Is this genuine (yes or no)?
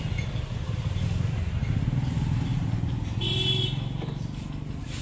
yes